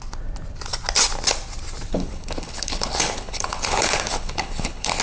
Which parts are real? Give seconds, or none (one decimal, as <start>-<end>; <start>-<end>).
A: 0.0-1.9